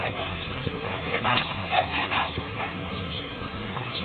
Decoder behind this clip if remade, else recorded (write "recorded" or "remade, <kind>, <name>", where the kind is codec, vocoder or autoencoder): remade, codec, SNAC